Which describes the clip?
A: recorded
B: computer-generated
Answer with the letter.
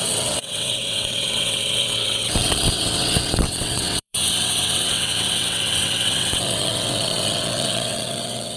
B